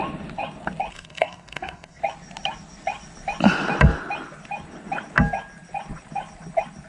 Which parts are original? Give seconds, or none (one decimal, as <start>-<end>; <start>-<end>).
0.0-0.9; 2.0-6.9